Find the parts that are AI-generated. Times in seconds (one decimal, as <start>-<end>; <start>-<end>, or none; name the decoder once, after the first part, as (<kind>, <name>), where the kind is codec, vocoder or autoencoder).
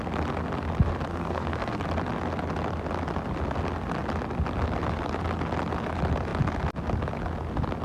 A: 1.1-1.8 (codec, SNAC)